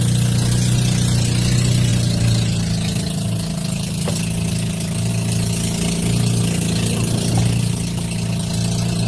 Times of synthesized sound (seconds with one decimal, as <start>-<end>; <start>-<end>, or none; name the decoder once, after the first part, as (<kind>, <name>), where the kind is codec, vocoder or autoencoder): none